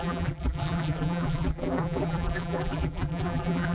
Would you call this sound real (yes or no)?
no